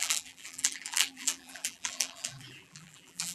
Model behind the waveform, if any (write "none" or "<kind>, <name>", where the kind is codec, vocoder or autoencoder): vocoder, BigVGAN v2